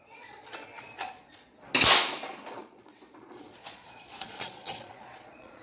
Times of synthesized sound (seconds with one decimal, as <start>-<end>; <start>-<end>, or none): 0.0-1.7; 2.5-5.6